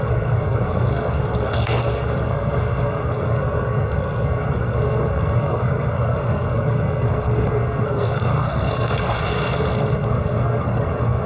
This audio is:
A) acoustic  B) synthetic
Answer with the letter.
B